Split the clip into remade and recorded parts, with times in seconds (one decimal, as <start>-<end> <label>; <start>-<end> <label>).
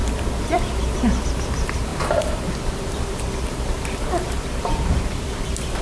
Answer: 0.0-1.2 remade; 1.2-1.9 recorded; 1.9-5.8 remade